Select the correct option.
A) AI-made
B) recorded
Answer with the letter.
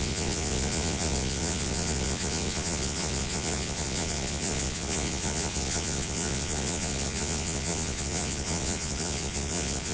A